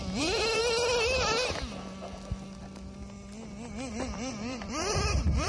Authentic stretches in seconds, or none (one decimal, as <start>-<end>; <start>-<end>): 0.6-3.9